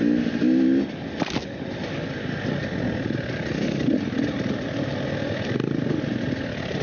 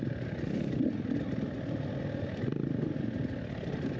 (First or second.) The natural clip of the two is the first